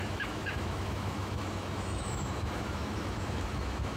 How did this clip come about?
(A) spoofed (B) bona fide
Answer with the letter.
A